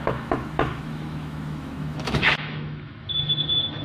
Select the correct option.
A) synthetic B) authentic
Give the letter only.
A